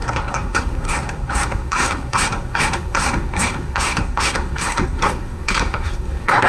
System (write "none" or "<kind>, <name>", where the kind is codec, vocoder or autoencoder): codec, SNAC